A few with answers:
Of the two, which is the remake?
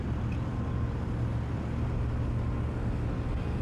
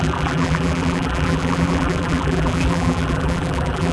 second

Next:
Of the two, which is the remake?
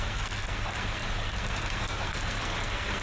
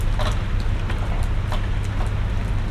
first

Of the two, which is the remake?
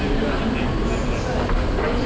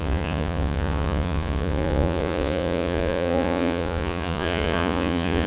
second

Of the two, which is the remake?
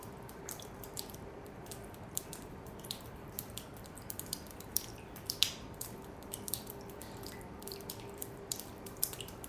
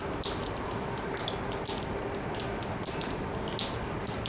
first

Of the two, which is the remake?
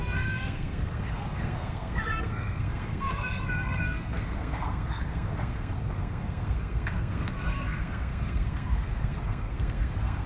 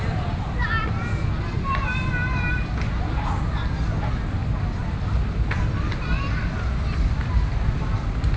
first